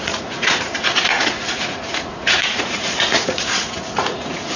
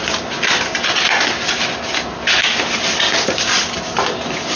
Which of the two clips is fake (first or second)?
first